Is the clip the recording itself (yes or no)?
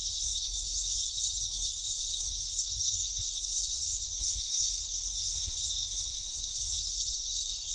no